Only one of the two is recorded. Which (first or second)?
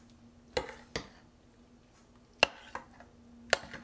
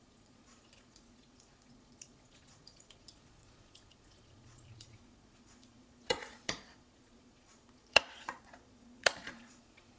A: first